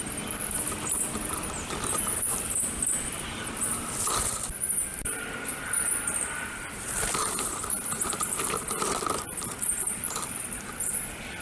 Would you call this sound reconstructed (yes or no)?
no